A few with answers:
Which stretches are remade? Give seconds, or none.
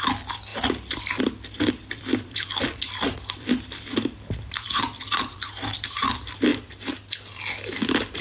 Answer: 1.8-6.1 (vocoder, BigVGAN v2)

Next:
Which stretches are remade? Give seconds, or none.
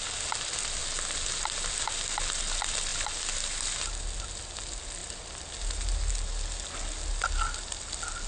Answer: none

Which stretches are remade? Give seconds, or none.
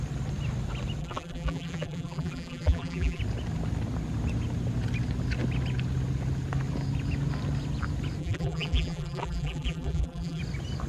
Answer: 1.0-3.2 (vocoder, BigVGAN v2); 8.2-10.4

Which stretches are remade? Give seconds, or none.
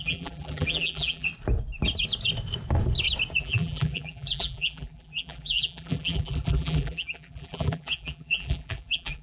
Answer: 0.0-1.3 (vocoder, BigVGAN v2); 3.4-9.2